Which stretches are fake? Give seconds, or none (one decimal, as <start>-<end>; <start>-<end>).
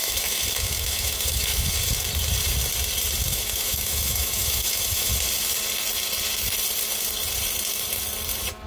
0.0-1.7; 3.3-5.1